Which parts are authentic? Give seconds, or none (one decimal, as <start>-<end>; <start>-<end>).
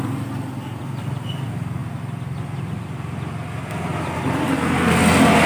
0.0-5.5